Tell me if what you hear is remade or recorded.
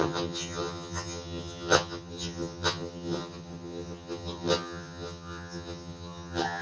remade